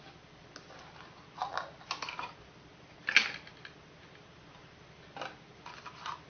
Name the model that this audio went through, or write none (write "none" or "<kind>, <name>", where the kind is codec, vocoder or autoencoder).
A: none